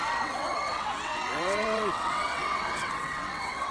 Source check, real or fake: fake